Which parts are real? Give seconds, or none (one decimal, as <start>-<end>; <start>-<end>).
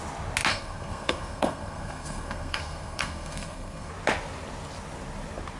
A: 0.0-0.5; 3.9-5.6